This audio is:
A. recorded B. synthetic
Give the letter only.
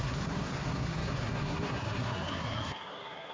B